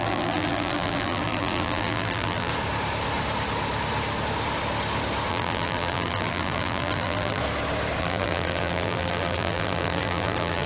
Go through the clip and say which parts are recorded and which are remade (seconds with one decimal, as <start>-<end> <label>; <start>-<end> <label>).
0.0-2.5 remade; 2.5-5.3 recorded; 5.3-7.4 remade; 7.4-8.0 recorded; 8.0-10.7 remade

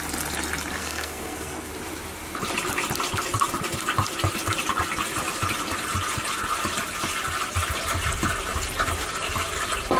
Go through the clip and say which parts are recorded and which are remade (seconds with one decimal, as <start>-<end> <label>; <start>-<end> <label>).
0.0-0.8 recorded; 0.8-1.7 remade; 1.7-10.0 recorded

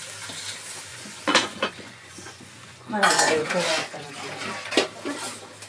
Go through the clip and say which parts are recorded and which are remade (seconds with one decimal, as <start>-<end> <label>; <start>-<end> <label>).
0.0-0.9 recorded; 0.9-4.1 remade; 4.1-5.7 recorded